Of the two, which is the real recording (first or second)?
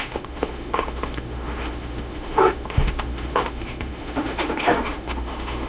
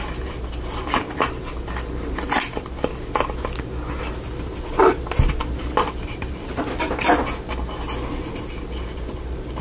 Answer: second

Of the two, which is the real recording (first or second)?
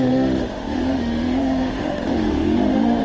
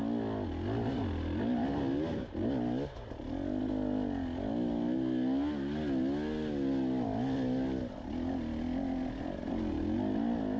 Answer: second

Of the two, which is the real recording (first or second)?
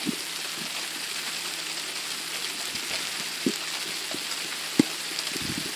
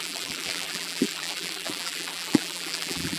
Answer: first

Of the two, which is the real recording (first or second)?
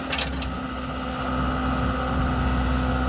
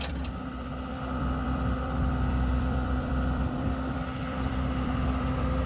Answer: first